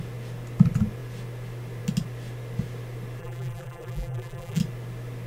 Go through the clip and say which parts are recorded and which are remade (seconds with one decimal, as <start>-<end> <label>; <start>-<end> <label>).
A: 0.0-3.2 recorded; 3.2-4.6 remade; 4.6-5.3 recorded